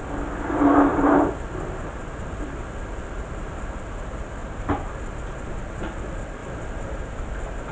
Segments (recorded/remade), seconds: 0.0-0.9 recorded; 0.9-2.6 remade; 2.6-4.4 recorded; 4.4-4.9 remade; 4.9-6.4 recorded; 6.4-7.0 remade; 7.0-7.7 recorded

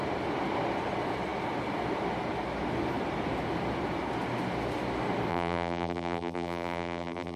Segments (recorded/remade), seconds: 0.0-5.3 recorded; 5.3-7.4 remade

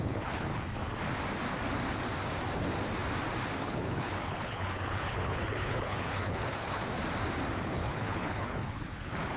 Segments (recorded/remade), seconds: 0.0-0.5 remade; 0.5-3.6 recorded; 3.6-6.8 remade; 6.8-7.6 recorded; 7.6-9.4 remade

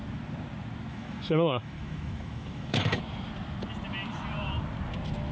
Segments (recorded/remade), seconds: 0.0-0.9 recorded; 0.9-3.0 remade; 3.0-5.3 recorded

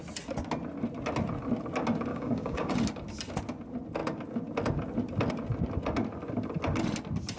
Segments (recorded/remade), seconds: 0.0-2.1 recorded; 2.1-2.7 remade; 2.7-7.4 recorded

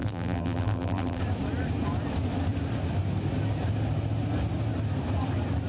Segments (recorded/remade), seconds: 0.0-1.2 remade; 1.2-5.7 recorded

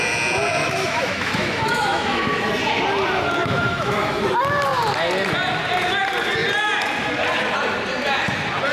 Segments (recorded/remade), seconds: 0.0-0.6 recorded; 0.6-2.5 remade; 2.5-3.4 recorded; 3.4-4.2 remade; 4.2-8.7 recorded